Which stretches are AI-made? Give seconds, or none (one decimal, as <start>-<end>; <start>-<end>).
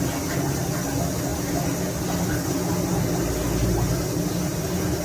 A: none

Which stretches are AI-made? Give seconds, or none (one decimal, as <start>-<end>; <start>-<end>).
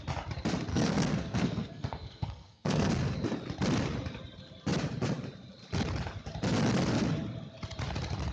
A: 0.7-2.9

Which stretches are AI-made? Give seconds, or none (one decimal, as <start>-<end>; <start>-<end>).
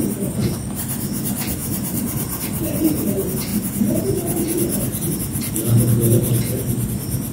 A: 0.4-0.9; 1.6-3.1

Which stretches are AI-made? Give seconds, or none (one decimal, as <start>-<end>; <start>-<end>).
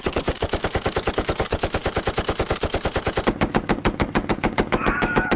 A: 0.0-1.8; 3.5-5.4